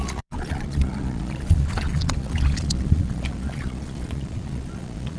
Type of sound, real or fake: fake